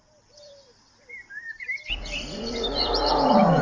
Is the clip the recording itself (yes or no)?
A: no